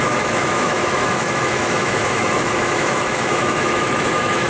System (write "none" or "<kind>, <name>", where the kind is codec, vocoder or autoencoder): autoencoder, DAC-VAE